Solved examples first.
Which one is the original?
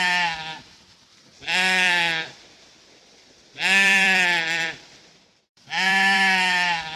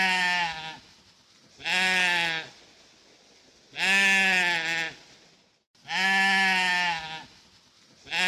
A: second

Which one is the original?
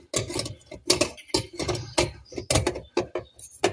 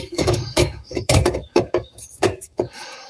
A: first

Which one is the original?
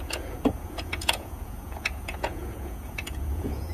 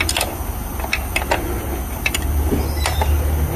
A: second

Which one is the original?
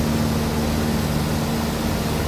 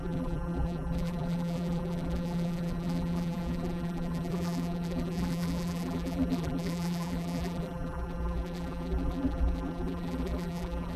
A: first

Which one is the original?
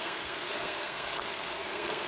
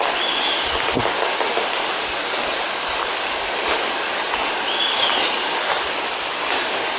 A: second